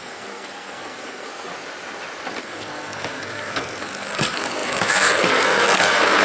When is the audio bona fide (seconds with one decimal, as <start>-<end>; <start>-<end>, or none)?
1.5-2.4